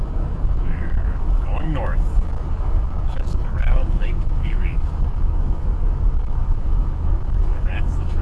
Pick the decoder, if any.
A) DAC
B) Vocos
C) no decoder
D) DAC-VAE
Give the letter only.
A